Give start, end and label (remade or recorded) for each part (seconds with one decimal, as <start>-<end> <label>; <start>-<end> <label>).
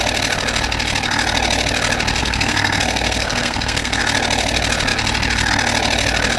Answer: 0.0-2.2 recorded; 2.2-4.0 remade; 4.0-6.4 recorded